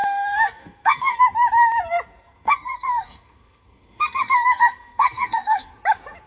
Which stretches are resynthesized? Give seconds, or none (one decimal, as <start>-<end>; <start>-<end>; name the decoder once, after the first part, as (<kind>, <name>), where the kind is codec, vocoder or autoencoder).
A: 0.0-1.2 (codec, SNAC); 2.1-5.7